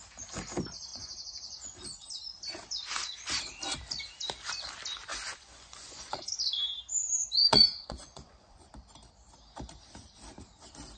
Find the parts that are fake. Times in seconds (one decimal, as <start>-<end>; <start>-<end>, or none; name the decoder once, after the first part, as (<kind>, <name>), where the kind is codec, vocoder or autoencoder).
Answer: 0.9-2.1 (vocoder, Vocos); 5.1-6.3; 7.4-8.7